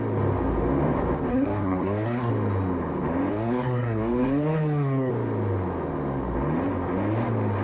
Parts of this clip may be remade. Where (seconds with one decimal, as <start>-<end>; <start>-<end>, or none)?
1.3-2.3; 3.3-5.1